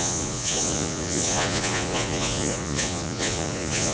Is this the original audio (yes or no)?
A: no